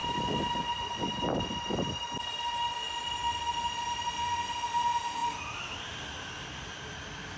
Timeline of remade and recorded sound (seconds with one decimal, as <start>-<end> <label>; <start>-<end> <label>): 0.0-7.4 recorded